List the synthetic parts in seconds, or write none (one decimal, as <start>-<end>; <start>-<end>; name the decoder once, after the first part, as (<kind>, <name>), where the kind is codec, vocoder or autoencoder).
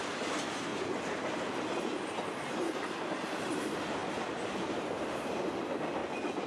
0.0-0.7 (vocoder, BigVGAN v2); 1.8-4.0; 4.7-6.0